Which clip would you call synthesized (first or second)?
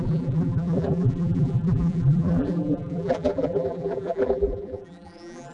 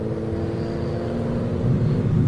first